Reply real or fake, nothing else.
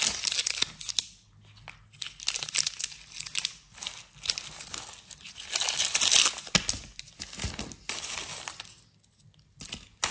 real